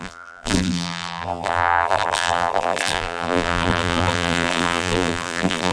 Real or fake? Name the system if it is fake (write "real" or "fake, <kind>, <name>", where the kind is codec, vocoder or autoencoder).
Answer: fake, vocoder, BigVGAN v2